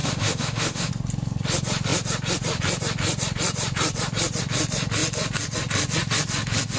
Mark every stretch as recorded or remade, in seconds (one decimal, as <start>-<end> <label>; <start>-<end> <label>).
0.0-0.9 remade; 0.9-6.8 recorded